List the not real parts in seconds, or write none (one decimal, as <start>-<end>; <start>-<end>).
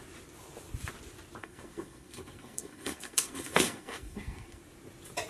1.4-4.6